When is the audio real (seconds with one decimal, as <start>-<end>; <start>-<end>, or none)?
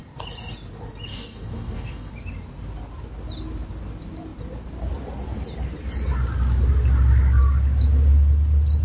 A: 0.0-1.1; 2.1-8.8